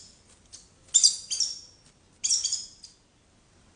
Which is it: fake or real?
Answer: real